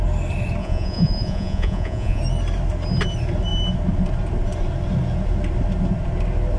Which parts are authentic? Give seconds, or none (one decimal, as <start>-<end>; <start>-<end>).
0.0-0.6; 2.2-6.6